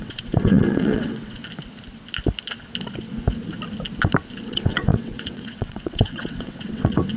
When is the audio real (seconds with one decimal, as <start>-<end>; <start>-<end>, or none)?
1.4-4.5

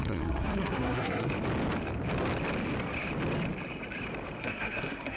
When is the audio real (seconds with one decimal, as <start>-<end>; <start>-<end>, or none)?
1.3-4.4

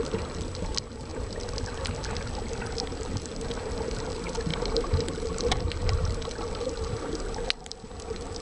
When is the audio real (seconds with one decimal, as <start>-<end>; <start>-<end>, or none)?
0.0-8.4